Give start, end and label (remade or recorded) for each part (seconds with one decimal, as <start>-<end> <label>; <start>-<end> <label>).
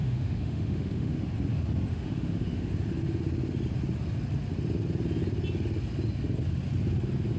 0.0-1.2 remade; 1.2-1.9 recorded; 1.9-2.7 remade; 2.7-7.4 recorded